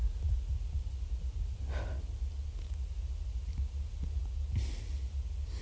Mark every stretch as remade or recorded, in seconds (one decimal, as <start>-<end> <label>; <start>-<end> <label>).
0.0-5.6 recorded